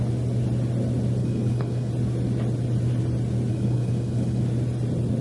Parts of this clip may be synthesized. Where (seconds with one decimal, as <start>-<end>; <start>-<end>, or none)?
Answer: 1.2-1.9; 3.5-4.4